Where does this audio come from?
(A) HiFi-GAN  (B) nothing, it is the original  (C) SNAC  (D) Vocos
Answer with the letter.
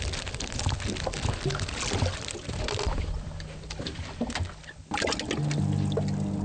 B